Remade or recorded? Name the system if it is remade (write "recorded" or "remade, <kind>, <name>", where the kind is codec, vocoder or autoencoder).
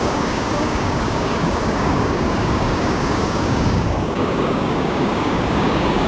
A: remade, codec, DAC